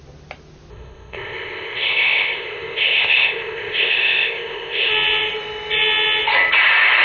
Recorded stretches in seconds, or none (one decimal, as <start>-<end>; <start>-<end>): 0.0-0.7; 4.9-7.0